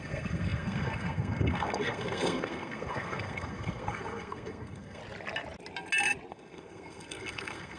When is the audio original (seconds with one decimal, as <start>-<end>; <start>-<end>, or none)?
5.0-6.3